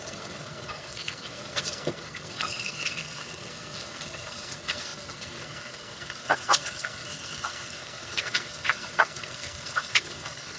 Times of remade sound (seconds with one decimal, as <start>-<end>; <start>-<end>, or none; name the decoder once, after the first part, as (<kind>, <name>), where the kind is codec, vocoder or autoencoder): 0.0-10.6 (codec, SNAC)

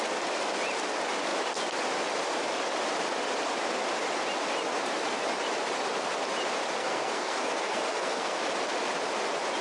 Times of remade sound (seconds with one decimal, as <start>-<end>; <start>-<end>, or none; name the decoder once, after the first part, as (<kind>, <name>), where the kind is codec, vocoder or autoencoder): 6.8-8.4 (codec, SNAC)

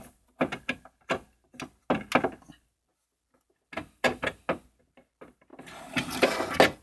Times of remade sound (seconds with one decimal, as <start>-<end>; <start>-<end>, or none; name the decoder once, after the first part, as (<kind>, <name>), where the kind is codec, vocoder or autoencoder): none

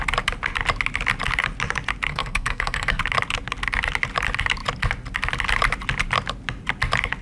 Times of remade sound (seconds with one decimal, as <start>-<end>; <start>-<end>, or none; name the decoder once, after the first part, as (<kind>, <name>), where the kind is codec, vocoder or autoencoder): 2.1-3.0 (codec, SNAC)

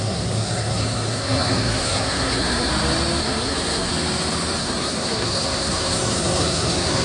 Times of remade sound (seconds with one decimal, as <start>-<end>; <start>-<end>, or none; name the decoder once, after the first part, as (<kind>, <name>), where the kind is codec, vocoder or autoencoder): 0.0-2.7 (codec, SNAC); 3.2-3.9; 4.6-7.0

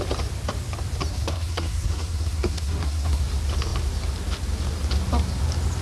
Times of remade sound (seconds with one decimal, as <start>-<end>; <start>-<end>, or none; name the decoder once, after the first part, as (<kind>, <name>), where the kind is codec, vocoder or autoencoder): 1.1-3.2 (codec, SNAC)

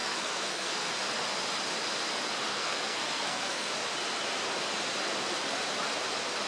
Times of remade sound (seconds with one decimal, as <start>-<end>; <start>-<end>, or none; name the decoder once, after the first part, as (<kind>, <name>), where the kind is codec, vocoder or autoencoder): 0.0-0.9 (codec, SNAC); 2.5-3.7

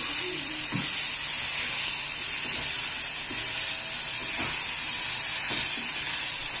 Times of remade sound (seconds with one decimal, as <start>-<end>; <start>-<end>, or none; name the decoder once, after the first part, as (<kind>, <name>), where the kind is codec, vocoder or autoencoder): none